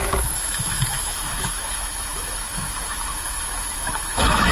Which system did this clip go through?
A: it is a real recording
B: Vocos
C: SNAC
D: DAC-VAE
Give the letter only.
D